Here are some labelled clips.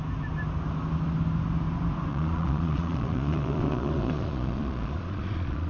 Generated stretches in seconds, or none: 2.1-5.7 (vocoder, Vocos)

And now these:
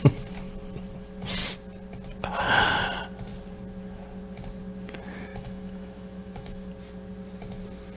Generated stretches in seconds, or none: 5.3-6.7 (autoencoder, DAC-VAE)

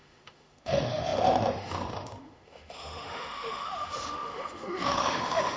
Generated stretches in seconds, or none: 0.0-5.6 (autoencoder, DAC-VAE)

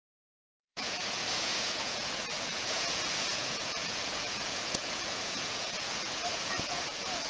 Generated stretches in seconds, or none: 0.0-7.3 (vocoder, Vocos)

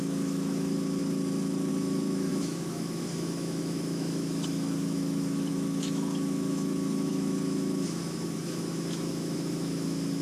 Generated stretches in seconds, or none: 0.0-1.0 (autoencoder, DAC-VAE); 1.7-10.2